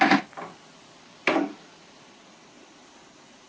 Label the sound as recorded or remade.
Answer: recorded